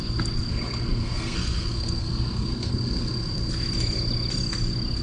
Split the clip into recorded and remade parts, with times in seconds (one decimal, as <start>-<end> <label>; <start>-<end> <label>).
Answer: 0.0-0.5 recorded; 0.5-3.5 remade; 3.5-5.0 recorded